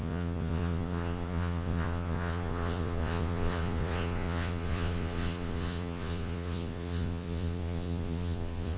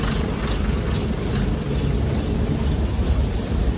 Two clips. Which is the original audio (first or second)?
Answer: second